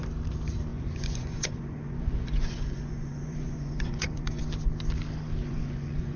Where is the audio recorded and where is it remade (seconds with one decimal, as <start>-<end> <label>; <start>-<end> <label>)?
0.0-0.7 recorded; 0.7-4.4 remade; 4.4-5.4 recorded; 5.4-6.2 remade